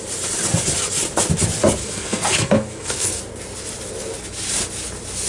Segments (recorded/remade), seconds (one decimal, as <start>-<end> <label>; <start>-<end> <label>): 0.0-1.8 recorded; 1.8-3.2 remade; 3.2-5.3 recorded